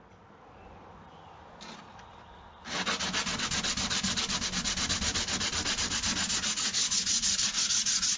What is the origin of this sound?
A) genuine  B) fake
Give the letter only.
A